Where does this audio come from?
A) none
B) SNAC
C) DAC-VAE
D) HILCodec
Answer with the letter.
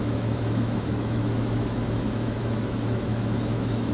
C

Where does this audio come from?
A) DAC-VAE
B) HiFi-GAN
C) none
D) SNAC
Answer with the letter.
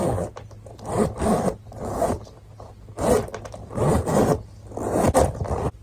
C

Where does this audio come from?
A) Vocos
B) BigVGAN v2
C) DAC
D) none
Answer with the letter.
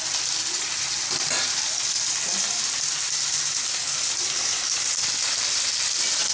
D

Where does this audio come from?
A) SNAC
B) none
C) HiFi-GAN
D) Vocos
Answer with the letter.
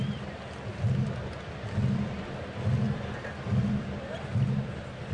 B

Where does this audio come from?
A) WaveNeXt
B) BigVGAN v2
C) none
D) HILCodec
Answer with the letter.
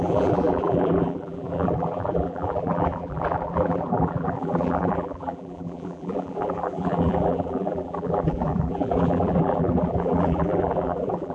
B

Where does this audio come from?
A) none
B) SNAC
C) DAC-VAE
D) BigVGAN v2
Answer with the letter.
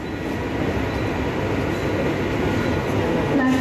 A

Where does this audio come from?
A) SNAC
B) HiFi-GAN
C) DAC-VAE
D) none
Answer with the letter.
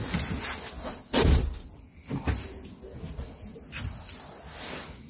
D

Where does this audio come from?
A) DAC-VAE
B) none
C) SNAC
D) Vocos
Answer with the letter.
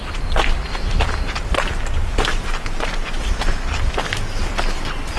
B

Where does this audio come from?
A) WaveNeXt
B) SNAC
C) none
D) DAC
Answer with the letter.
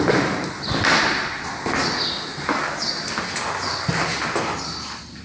C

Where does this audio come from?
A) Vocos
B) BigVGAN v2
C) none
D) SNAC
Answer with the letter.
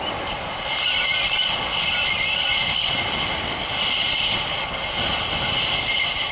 C